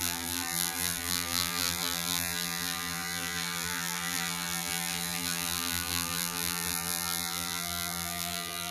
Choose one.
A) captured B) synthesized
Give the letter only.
B